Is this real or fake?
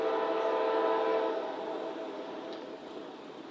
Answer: real